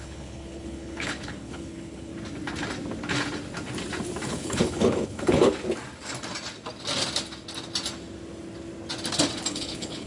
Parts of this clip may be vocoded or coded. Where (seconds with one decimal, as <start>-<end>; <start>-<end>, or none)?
0.0-2.1; 4.3-5.5; 9.5-10.1